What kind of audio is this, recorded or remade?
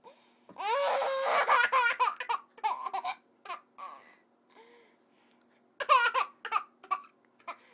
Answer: recorded